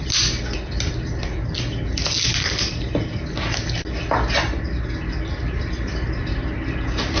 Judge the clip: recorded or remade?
recorded